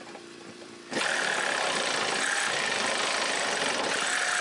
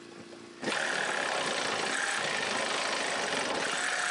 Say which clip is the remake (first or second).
first